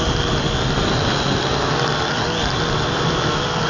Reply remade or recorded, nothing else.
recorded